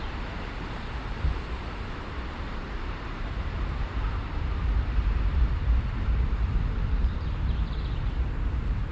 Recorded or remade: remade